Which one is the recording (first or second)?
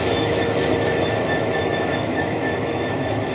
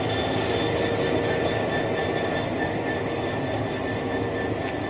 second